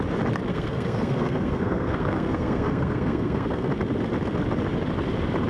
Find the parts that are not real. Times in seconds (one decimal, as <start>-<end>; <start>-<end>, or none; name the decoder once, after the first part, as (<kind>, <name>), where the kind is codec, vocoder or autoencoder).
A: 0.5-3.7 (codec, SNAC)